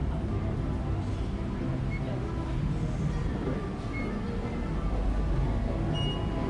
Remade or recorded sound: recorded